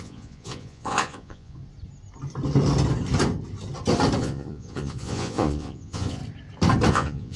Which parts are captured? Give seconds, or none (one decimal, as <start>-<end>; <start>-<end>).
1.6-4.2; 6.2-6.9